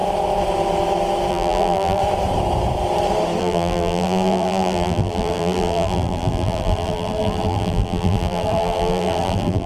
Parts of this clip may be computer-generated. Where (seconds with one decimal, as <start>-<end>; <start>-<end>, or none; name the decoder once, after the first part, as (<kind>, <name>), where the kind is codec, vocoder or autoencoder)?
1.3-2.0 (vocoder, BigVGAN v2); 3.4-9.7